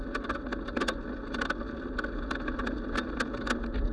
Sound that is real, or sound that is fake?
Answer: real